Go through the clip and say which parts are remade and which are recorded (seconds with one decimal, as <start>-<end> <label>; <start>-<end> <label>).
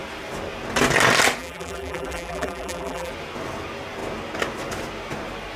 0.0-1.4 recorded; 1.4-3.1 remade; 3.1-5.6 recorded